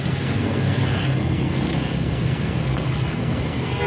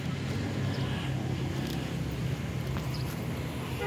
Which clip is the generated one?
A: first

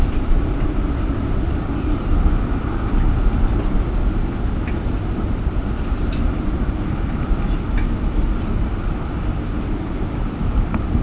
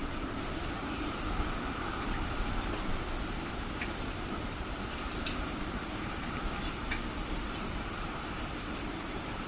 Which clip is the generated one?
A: second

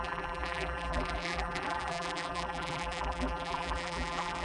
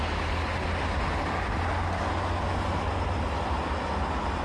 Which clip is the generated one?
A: first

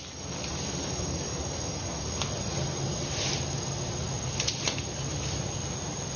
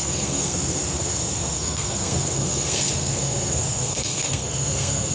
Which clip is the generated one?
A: second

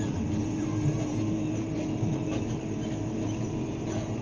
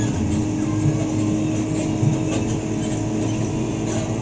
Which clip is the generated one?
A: first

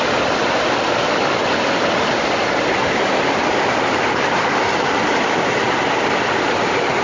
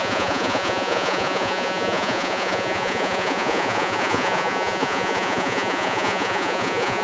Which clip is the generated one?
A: second